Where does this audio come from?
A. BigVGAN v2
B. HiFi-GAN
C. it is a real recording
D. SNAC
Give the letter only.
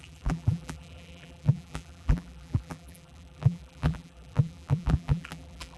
A